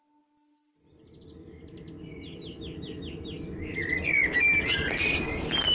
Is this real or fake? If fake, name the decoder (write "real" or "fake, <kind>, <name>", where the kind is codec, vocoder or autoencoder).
real